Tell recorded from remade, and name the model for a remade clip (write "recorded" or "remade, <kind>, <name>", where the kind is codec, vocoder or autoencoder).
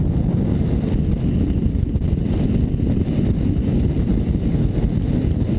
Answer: recorded